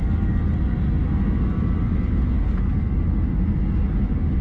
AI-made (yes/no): no